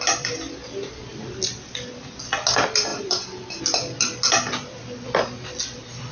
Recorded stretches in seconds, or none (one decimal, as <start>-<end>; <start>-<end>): 0.0-6.1

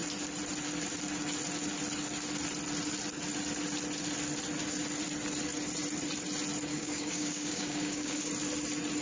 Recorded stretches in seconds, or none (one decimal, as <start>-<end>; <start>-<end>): 0.0-6.7; 8.2-9.0

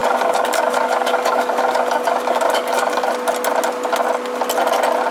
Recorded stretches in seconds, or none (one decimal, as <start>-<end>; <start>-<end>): 3.1-5.1

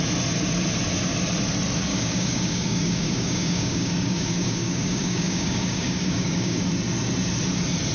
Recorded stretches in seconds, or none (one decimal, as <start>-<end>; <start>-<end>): 0.0-1.9; 6.6-7.9